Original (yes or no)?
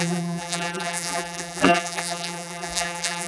no